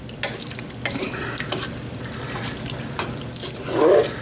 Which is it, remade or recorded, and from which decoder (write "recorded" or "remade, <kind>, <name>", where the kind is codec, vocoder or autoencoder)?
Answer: recorded